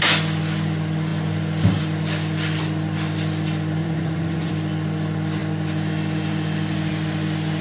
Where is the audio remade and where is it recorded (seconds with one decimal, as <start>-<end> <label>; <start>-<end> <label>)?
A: 0.0-3.8 recorded; 3.8-4.5 remade; 4.5-7.6 recorded